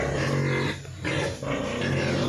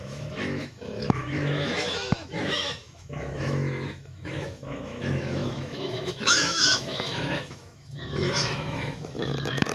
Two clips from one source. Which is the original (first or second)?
first